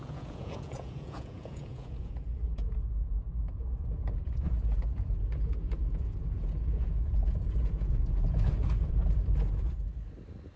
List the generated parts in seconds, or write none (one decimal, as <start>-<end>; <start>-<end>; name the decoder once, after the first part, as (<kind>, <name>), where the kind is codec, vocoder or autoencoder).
0.0-9.0 (vocoder, Vocos)